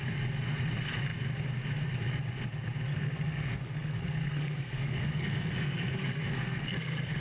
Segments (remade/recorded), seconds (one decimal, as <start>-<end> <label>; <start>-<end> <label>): 0.0-2.9 recorded; 2.9-7.2 remade